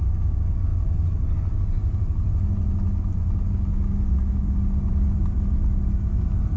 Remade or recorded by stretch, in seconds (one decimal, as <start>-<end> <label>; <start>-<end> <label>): 0.0-6.6 recorded